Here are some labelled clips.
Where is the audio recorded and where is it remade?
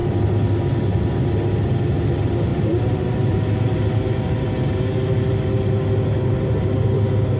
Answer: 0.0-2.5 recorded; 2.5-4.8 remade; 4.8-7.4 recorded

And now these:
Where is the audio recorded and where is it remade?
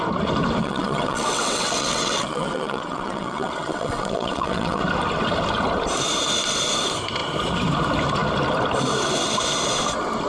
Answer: 0.0-0.6 recorded; 0.6-4.8 remade; 4.8-10.3 recorded